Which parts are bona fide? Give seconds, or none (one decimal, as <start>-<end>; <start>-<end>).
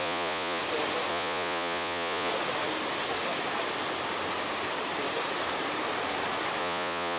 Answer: 0.6-1.1; 2.3-6.6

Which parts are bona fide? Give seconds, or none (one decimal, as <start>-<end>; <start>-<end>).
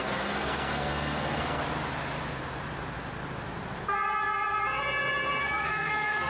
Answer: 1.6-5.4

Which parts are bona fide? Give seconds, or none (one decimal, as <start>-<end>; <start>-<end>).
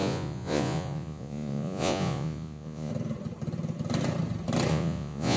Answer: 2.9-4.7